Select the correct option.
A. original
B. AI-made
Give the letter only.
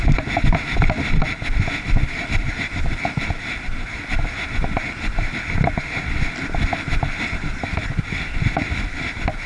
A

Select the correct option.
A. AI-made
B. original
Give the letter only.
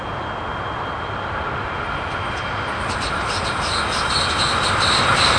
B